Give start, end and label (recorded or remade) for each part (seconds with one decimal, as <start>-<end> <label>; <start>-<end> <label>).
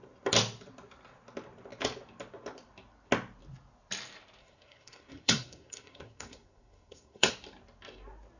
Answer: 0.0-4.4 recorded; 4.4-7.3 remade; 7.3-8.4 recorded